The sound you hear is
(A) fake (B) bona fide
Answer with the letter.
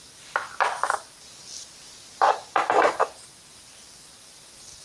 B